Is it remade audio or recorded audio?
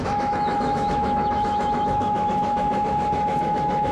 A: remade